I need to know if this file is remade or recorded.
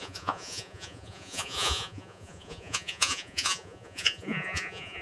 remade